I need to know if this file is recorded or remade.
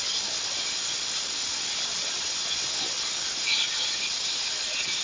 recorded